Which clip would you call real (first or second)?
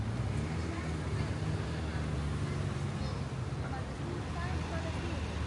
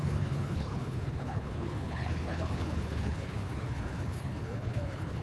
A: first